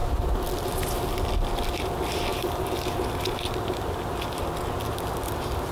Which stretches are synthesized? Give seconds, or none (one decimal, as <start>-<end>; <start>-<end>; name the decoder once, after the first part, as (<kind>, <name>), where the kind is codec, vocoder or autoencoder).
2.3-2.9 (vocoder, BigVGAN v2)